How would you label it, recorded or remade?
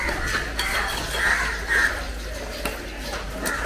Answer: recorded